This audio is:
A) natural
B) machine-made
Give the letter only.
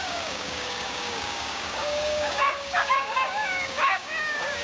B